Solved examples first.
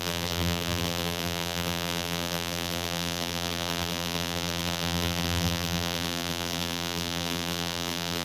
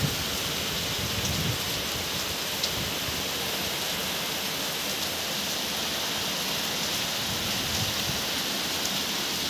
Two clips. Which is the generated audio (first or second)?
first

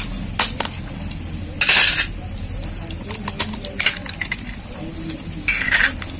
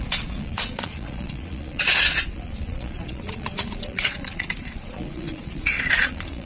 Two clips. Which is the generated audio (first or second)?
second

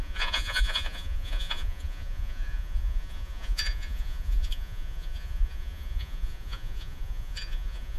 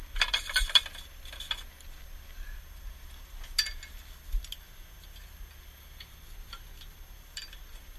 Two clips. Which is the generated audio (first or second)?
first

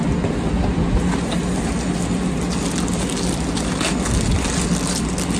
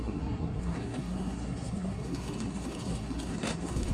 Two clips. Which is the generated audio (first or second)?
second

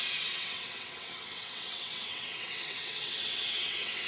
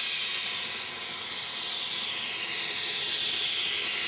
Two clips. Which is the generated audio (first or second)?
first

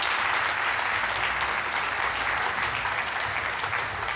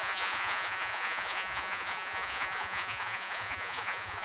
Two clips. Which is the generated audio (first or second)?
second